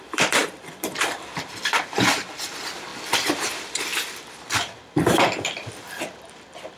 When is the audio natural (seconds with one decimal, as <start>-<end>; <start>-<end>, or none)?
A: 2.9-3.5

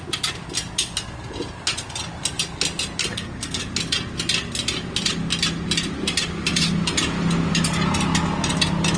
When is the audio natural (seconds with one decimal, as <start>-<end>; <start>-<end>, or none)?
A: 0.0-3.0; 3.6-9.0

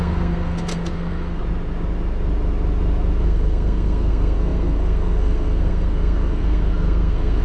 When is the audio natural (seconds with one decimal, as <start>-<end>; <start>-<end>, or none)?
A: 1.4-3.2

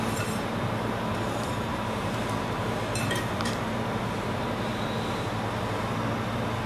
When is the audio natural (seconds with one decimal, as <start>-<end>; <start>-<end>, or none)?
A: 4.7-6.7